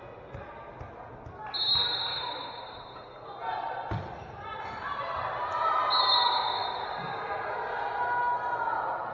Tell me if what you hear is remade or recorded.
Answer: recorded